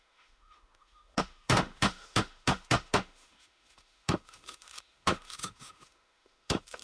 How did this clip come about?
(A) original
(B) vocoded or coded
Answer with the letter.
B